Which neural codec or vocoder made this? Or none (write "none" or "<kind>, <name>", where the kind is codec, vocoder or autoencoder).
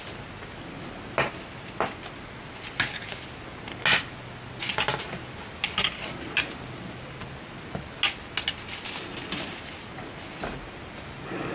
none